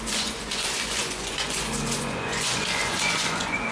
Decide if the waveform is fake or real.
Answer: fake